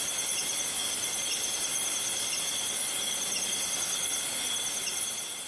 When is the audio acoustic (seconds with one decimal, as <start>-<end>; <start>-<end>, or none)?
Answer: 0.0-1.7; 3.8-5.5